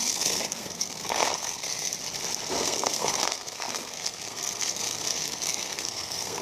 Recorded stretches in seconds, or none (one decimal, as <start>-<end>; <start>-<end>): 1.9-2.5